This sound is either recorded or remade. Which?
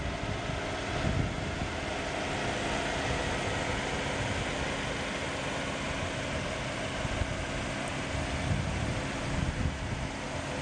recorded